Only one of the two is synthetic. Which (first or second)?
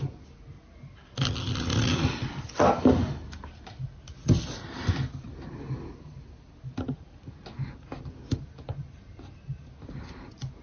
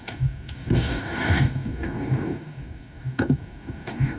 second